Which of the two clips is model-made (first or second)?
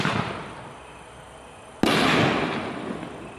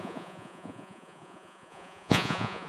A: second